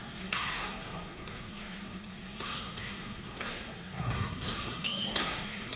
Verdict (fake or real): fake